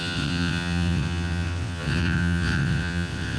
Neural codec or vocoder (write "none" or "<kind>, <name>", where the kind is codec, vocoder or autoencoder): vocoder, WaveNeXt